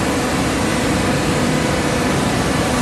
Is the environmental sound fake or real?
fake